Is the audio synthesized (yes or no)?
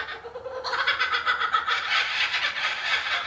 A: no